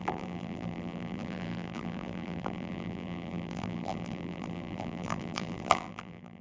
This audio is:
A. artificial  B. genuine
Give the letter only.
A